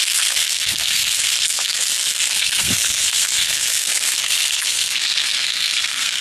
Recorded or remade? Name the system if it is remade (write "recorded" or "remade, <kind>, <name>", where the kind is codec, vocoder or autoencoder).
remade, codec, SNAC